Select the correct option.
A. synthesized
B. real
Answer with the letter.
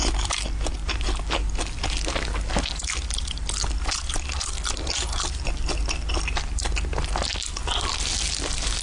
B